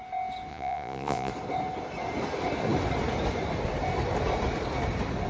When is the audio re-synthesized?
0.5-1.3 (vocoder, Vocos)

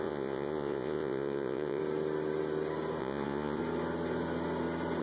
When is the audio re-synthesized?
0.0-1.8 (vocoder, Vocos); 3.0-3.6

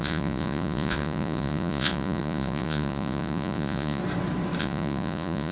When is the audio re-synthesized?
0.0-4.0 (vocoder, Vocos); 4.6-5.5

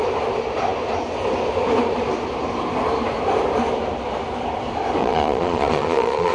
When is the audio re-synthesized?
5.0-6.3 (vocoder, Vocos)

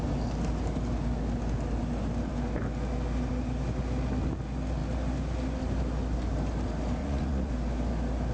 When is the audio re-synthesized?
7.0-7.5 (vocoder, Vocos)

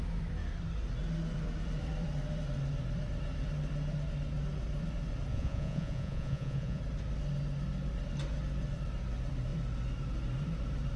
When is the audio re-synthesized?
5.3-6.8 (vocoder, Vocos)

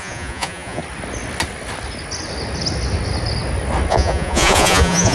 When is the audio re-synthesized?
0.0-0.8 (vocoder, Vocos); 3.9-5.1

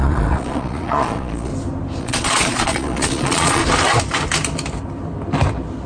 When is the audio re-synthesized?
0.0-1.5 (vocoder, Vocos); 2.0-3.6